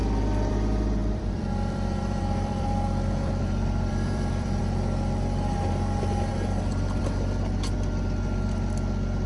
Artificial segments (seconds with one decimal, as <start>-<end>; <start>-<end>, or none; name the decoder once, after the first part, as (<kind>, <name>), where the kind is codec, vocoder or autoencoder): 0.0-0.5 (vocoder, BigVGAN v2); 1.0-4.6